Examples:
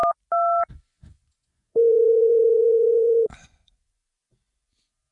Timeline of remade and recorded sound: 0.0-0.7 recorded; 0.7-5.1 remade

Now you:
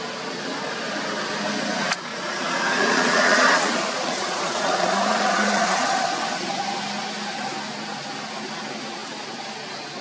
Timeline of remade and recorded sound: 0.0-2.1 recorded; 2.1-6.0 remade; 6.0-10.0 recorded

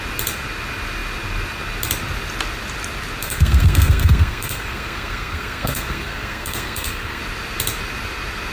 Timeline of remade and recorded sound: 0.0-3.2 recorded; 3.2-7.2 remade; 7.2-8.5 recorded

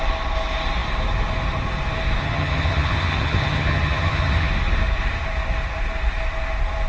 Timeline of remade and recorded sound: 0.0-2.2 recorded; 2.2-4.5 remade; 4.5-6.9 recorded

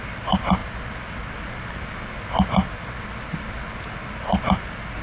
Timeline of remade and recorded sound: 0.0-5.0 recorded